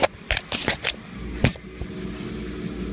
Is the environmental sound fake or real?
real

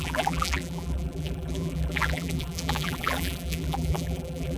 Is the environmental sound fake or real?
fake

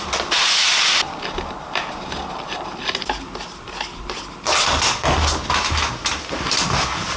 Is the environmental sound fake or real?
real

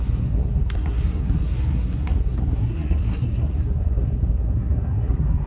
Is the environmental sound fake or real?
fake